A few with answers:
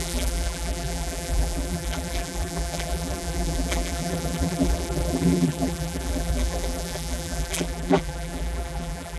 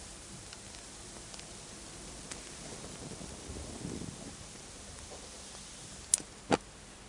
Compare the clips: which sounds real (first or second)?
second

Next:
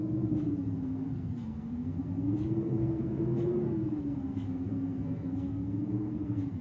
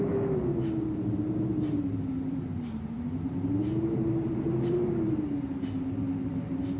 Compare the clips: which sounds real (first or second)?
second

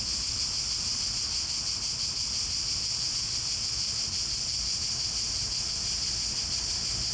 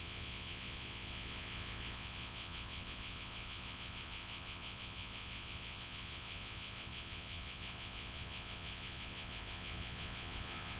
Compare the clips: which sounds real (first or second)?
first